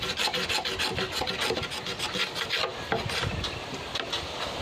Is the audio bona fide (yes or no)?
yes